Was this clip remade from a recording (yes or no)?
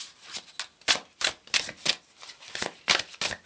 no